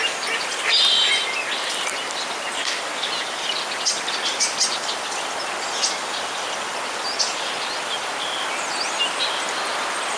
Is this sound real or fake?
real